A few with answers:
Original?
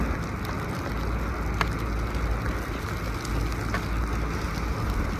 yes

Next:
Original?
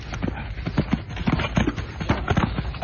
yes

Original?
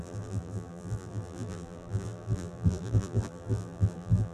no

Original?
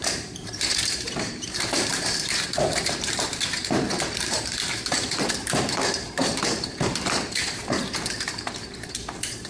no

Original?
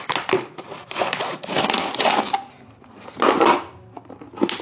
yes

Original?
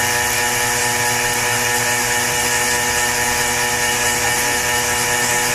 yes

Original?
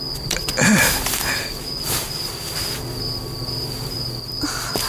yes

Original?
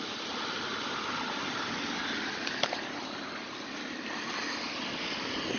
yes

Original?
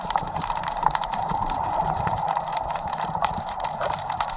no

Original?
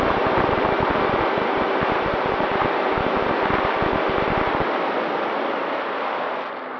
no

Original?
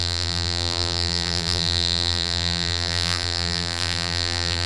no